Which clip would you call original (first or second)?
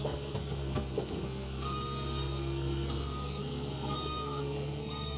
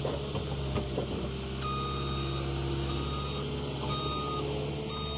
second